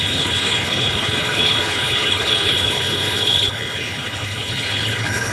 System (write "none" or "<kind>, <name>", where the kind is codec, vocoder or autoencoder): codec, HILCodec